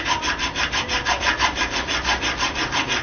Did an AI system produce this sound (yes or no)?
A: no